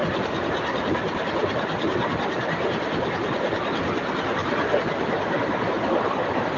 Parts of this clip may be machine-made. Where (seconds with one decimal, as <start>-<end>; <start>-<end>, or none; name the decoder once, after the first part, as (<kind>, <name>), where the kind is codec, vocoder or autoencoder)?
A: none